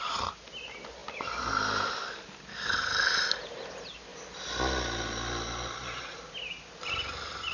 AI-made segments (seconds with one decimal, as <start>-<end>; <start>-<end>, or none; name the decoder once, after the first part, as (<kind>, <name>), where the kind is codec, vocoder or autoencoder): none